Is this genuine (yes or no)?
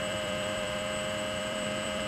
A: no